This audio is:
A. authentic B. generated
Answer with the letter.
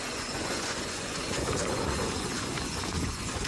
B